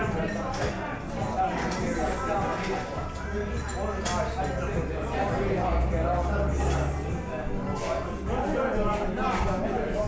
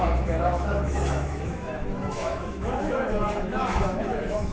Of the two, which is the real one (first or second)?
first